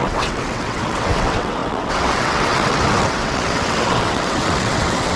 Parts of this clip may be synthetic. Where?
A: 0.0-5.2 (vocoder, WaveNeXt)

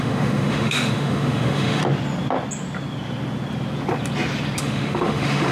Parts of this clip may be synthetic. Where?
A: 0.0-1.8 (autoencoder, DAC-VAE); 4.6-5.5

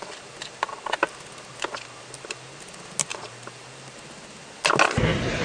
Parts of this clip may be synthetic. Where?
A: none